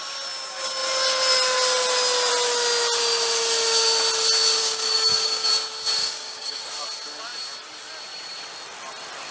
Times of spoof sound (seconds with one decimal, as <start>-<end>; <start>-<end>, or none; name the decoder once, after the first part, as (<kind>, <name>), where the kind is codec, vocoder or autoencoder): 4.6-5.5 (codec, DAC); 6.0-6.6